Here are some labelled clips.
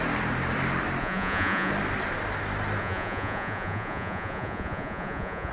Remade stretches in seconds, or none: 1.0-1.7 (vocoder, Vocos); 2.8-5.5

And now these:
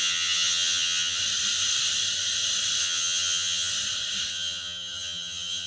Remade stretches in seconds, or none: 0.0-1.2 (vocoder, HiFi-GAN); 2.8-3.7; 4.3-5.7